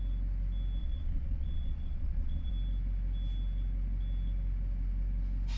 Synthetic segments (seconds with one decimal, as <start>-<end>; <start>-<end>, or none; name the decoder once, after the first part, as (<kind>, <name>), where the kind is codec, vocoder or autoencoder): 0.8-2.5 (vocoder, Vocos)